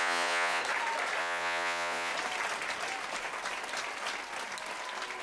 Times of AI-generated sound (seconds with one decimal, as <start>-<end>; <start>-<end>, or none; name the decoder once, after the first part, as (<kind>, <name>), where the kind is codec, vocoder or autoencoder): 0.0-0.6 (vocoder, Vocos); 1.2-2.1